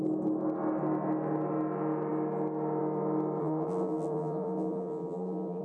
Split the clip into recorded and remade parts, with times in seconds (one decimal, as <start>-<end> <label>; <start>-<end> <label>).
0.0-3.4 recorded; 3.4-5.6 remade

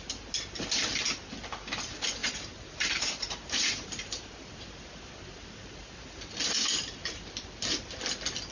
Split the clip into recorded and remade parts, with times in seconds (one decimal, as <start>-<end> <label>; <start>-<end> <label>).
0.0-2.2 recorded; 2.2-6.4 remade; 6.4-8.5 recorded

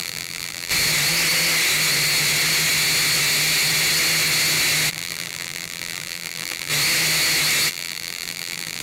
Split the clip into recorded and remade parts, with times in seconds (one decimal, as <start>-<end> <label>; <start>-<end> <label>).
0.0-0.7 remade; 0.7-4.9 recorded; 4.9-6.7 remade; 6.7-7.7 recorded; 7.7-8.8 remade

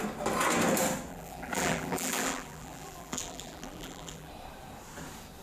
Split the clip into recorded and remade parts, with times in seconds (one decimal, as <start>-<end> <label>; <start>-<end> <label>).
0.0-1.1 recorded; 1.1-4.3 remade; 4.3-5.4 recorded

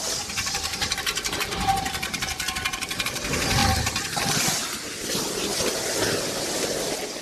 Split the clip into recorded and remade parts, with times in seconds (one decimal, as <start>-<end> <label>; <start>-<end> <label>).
0.0-7.2 recorded

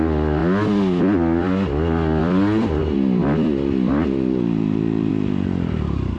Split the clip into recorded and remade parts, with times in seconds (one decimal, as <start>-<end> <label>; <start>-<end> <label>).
0.0-0.4 remade; 0.4-1.0 recorded; 1.0-6.2 remade